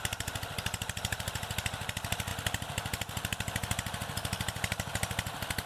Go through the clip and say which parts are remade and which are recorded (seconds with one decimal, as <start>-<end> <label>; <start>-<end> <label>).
0.0-5.7 recorded

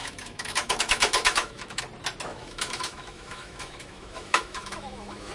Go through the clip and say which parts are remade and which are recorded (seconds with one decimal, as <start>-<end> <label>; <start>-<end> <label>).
0.0-1.8 remade; 1.8-2.3 recorded; 2.3-5.3 remade

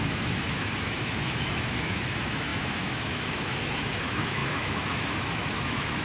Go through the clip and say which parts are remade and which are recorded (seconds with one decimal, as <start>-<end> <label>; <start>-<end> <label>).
0.0-6.0 remade

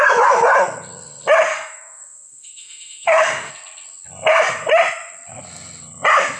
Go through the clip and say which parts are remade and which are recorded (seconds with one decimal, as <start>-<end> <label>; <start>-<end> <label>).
0.0-1.5 recorded; 1.5-3.5 remade; 3.5-6.4 recorded

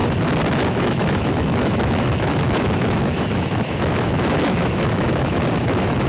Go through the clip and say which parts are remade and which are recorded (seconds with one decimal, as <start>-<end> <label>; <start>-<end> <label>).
0.0-0.7 recorded; 0.7-6.1 remade

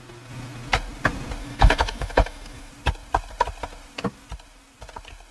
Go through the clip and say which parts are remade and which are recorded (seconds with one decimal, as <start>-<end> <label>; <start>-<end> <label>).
0.0-1.4 recorded; 1.4-2.7 remade; 2.7-5.3 recorded

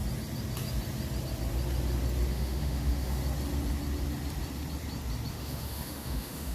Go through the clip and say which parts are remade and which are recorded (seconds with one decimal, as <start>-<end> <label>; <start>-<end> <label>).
0.0-2.3 recorded; 2.3-3.2 remade; 3.2-5.3 recorded; 5.3-6.5 remade

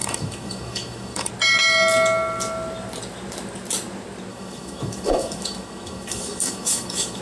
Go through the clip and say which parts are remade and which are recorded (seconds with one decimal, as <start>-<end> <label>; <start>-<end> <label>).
0.0-1.3 remade; 1.3-4.3 recorded; 4.3-7.2 remade